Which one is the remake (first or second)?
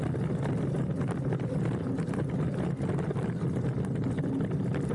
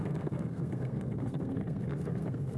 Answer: second